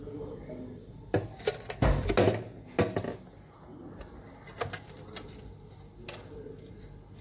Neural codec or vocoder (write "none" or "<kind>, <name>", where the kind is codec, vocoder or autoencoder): none